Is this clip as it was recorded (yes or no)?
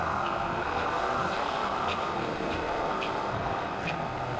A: no